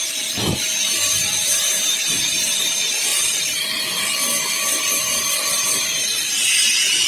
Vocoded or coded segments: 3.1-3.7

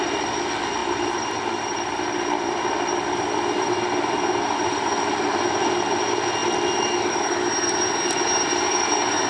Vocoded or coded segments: 0.8-2.8